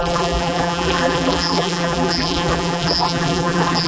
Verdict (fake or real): fake